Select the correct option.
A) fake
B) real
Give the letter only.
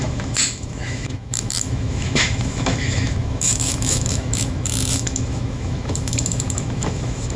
A